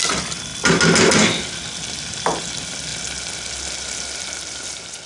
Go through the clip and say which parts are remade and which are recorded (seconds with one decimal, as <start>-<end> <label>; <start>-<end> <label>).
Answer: 0.0-5.1 recorded